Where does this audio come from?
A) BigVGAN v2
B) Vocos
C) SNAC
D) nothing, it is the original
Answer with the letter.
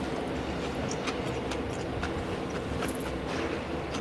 D